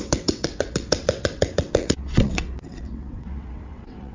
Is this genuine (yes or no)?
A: no